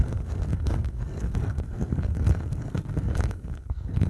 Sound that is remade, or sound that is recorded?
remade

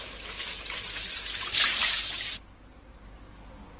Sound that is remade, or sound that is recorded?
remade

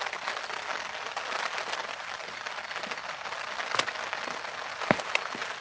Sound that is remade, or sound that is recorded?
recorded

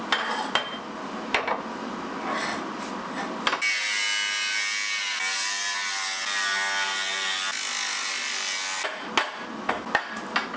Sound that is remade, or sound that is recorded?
recorded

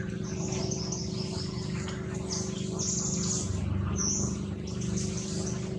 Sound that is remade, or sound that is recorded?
recorded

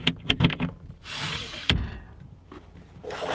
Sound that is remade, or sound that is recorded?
recorded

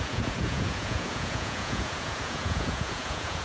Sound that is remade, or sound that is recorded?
remade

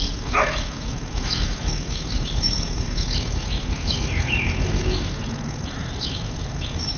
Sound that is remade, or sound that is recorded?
remade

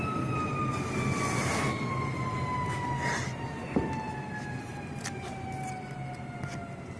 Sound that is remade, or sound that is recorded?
recorded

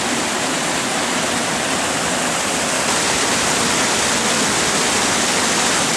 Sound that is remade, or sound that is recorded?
recorded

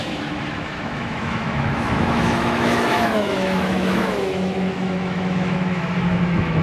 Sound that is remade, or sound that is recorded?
remade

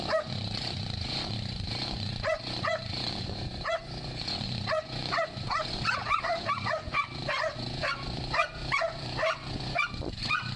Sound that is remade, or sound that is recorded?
remade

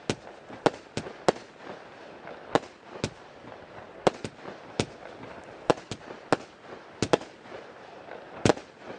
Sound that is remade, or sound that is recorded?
recorded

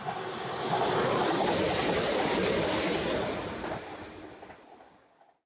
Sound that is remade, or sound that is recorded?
recorded